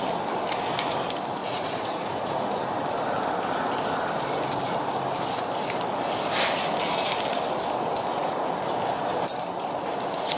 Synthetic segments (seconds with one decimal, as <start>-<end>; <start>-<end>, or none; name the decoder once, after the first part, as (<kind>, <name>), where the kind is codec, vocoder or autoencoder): 1.4-2.6 (vocoder, Vocos); 8.1-8.7